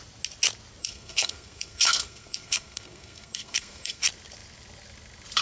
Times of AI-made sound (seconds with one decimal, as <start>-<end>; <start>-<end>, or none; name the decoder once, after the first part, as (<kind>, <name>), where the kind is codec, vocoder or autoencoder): 0.8-4.0 (codec, SNAC)